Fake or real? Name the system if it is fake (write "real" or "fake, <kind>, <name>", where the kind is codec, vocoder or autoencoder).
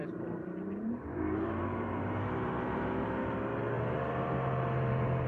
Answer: fake, vocoder, BigVGAN v2